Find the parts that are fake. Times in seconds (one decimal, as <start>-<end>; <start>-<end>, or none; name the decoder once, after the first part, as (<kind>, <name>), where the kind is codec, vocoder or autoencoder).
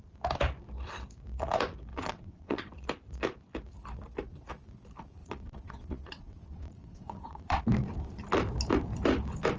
1.9-2.7 (vocoder, WaveNeXt); 5.2-7.6